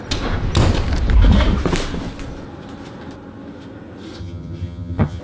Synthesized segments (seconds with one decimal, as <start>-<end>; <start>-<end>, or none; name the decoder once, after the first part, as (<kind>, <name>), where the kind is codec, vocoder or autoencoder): 4.2-5.2 (vocoder, HiFi-GAN)